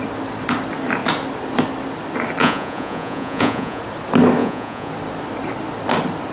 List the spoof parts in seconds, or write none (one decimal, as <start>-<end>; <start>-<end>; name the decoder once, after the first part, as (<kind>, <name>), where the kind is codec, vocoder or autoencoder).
2.4-3.8 (vocoder, Vocos); 4.4-4.9